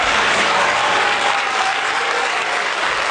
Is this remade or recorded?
remade